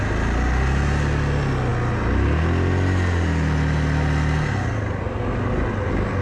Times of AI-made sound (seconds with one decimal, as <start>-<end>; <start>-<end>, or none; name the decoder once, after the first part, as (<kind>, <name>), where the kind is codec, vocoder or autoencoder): none